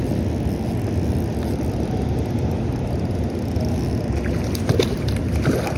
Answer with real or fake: real